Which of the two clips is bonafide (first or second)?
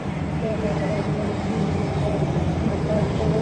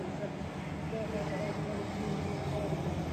second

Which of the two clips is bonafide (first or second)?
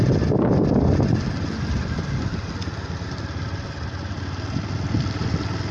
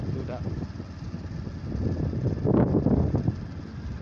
second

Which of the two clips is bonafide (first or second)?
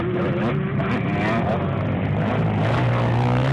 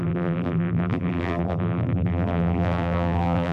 first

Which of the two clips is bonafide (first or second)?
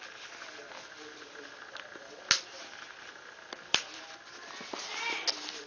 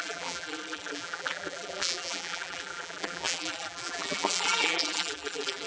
first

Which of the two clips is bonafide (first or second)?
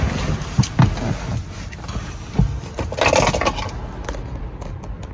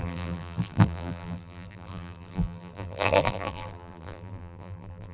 first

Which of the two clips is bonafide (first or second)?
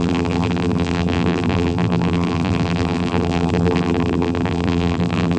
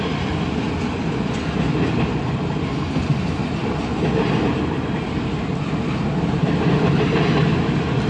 second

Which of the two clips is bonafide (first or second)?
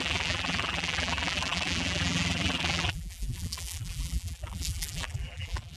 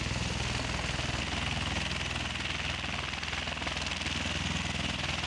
second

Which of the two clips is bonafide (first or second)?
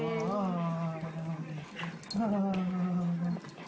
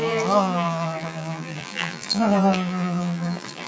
first